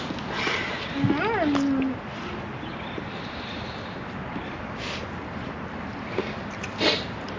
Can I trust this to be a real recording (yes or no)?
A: yes